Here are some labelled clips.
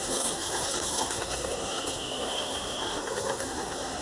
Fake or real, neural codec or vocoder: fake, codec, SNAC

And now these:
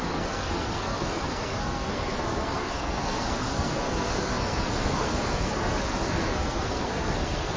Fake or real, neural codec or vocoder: fake, codec, SNAC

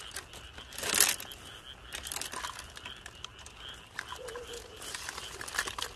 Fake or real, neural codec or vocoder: real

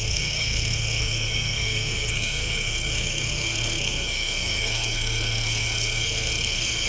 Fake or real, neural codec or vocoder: fake, codec, SNAC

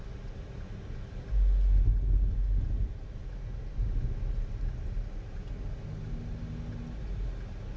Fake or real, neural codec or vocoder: real